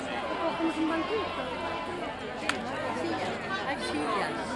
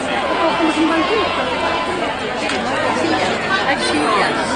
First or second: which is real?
first